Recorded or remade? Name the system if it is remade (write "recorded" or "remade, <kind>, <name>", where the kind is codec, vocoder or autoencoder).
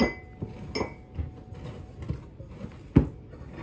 recorded